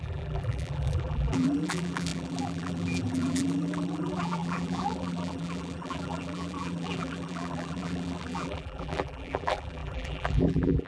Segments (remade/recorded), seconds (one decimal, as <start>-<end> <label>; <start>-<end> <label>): 0.0-10.9 remade